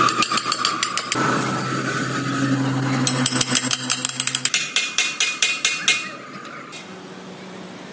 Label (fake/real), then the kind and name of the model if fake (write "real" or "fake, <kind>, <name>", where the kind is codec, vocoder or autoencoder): real